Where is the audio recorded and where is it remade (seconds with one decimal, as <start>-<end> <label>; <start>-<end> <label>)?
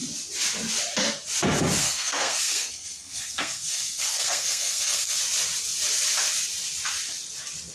0.0-1.8 recorded; 1.8-5.2 remade; 5.2-7.7 recorded